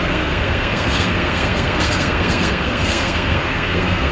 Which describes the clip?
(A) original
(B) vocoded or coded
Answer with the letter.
B